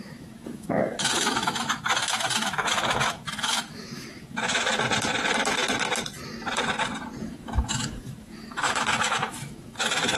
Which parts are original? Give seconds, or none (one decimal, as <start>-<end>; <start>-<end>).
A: 4.7-7.2